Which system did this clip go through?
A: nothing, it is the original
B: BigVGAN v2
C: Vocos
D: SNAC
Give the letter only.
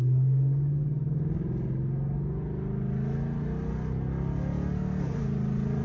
A